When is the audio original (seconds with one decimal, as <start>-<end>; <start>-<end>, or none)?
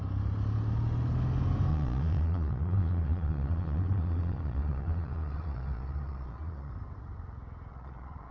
0.0-1.7; 6.7-7.7